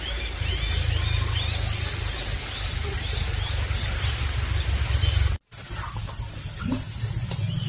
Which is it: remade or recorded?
recorded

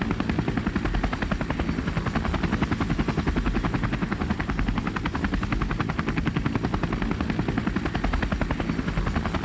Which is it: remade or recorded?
recorded